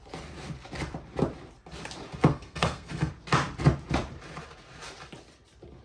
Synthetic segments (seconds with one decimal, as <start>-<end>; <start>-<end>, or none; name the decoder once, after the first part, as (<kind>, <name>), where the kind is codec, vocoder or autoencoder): 2.3-3.1 (codec, SNAC)